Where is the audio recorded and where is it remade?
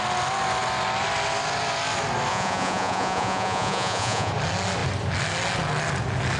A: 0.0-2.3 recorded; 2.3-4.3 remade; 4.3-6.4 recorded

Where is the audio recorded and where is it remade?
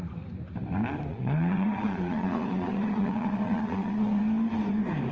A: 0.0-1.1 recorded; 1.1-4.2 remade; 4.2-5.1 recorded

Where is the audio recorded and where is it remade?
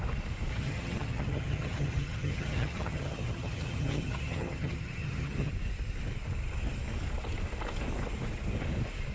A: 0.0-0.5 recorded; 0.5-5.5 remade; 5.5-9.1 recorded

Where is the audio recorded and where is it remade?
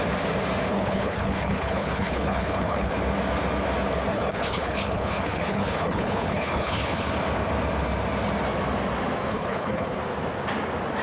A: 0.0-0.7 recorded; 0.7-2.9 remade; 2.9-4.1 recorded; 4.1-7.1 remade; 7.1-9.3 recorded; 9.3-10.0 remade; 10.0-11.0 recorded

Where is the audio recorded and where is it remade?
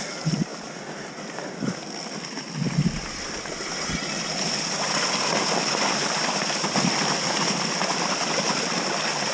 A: 0.0-9.3 remade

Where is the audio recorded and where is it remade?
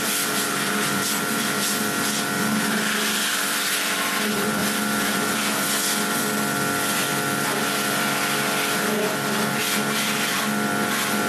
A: 0.0-11.3 recorded